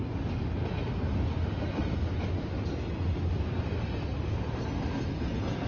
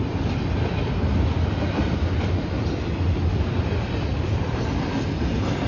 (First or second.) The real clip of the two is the first